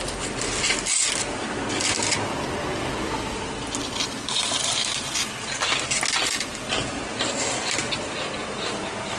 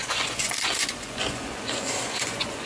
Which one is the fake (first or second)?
second